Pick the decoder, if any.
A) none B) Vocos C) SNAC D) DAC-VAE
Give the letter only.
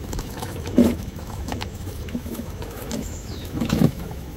D